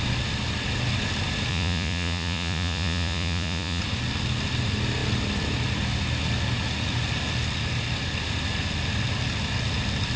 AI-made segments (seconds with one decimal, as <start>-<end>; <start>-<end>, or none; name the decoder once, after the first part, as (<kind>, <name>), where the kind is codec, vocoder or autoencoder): 1.5-3.8 (vocoder, Vocos)